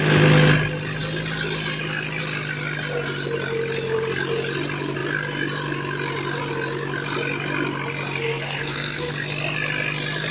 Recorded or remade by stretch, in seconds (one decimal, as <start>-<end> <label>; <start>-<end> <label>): 0.0-8.3 recorded; 8.3-9.1 remade; 9.1-10.3 recorded